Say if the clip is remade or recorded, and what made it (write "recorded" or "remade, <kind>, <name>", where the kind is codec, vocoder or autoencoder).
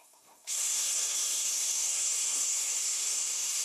remade, codec, SNAC